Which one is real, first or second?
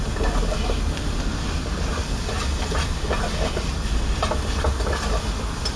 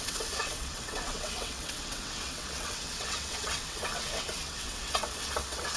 first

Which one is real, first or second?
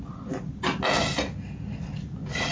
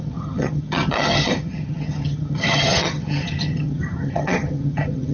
first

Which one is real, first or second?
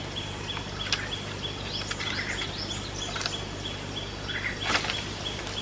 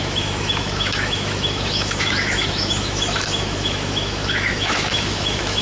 first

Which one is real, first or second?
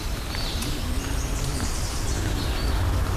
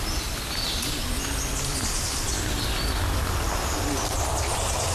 second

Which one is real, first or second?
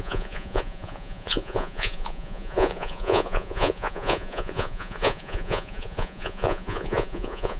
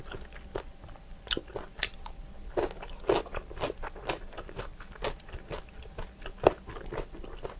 second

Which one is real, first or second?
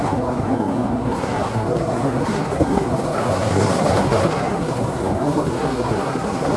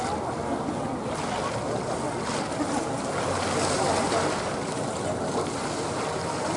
second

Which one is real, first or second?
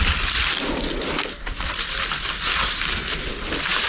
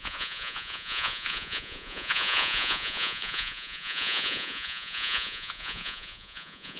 first